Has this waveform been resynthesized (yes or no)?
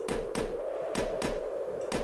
no